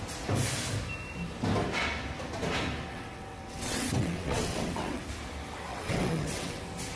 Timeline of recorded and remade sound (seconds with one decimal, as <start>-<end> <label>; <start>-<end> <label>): 0.0-2.9 recorded; 2.9-5.0 remade; 5.0-5.7 recorded; 5.7-6.6 remade; 6.6-7.0 recorded